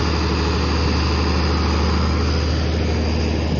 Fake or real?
real